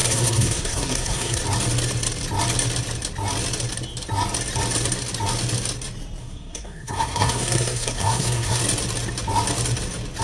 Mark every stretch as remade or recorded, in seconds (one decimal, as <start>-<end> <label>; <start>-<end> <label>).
0.0-1.4 remade; 1.4-6.2 recorded; 6.2-8.6 remade; 8.6-10.2 recorded